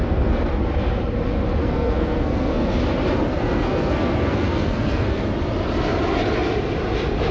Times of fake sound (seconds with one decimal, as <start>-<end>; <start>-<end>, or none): 0.0-0.6; 1.6-2.8; 3.3-5.3

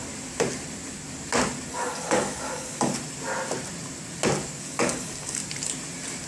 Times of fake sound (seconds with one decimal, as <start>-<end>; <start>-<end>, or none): 1.7-2.9; 4.6-5.4

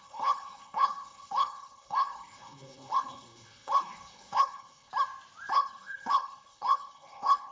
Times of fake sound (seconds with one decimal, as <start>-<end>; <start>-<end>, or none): 0.0-4.9; 5.5-7.5

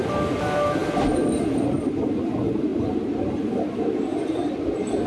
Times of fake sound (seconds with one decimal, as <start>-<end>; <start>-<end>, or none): 4.1-5.1

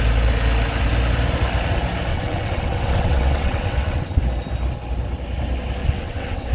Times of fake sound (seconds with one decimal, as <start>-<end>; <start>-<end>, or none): 2.1-4.2; 5.8-6.5

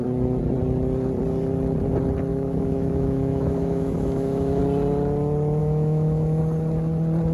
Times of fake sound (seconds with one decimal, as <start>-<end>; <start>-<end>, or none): 2.3-4.6; 5.6-6.4

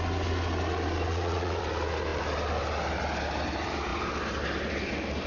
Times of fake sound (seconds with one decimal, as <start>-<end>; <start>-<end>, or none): 1.1-1.6